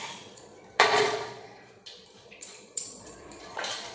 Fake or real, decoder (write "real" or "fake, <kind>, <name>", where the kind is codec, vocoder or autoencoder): fake, vocoder, Vocos